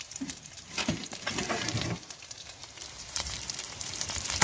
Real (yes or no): no